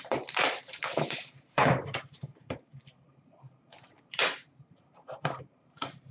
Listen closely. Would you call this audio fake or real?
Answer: fake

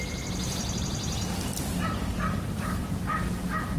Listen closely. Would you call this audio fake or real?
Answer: real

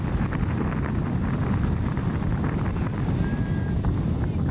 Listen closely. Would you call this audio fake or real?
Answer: real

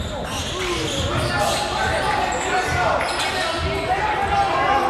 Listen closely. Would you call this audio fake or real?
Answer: real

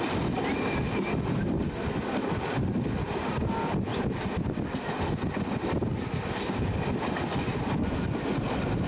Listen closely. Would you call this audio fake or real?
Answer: fake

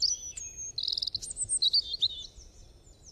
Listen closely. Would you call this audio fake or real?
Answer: real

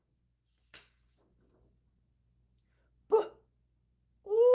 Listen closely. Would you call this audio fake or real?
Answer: fake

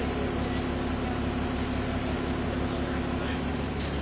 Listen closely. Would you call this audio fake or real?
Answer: real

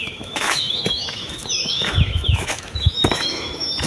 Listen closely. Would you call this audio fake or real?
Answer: fake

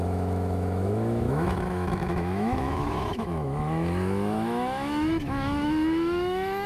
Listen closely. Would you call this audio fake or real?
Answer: fake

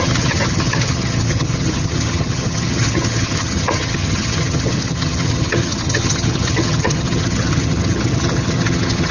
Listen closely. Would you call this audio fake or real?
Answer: fake